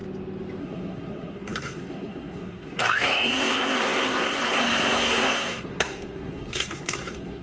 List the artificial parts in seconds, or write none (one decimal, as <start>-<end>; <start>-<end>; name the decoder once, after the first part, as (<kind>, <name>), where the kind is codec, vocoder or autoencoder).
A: 0.6-7.4 (codec, SNAC)